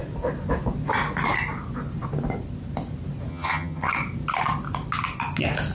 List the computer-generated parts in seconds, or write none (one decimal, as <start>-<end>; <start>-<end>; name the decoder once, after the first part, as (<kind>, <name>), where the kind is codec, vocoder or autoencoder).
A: 3.3-3.9 (vocoder, HiFi-GAN)